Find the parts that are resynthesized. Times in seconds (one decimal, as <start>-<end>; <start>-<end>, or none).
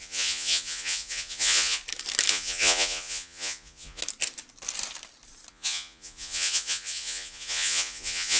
0.0-1.8; 2.3-4.0; 5.5-8.4